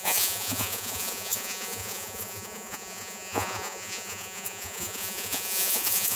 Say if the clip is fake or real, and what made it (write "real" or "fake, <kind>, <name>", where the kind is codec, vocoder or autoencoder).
fake, vocoder, Vocos